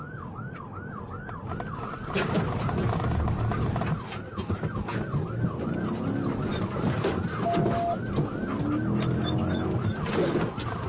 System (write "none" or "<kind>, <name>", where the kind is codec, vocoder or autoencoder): none